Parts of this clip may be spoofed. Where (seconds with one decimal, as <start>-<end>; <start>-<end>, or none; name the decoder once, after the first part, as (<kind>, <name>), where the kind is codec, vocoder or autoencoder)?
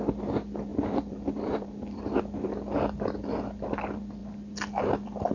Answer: 0.7-2.1 (vocoder, BigVGAN v2)